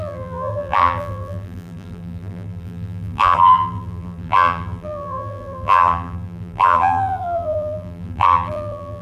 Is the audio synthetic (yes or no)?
yes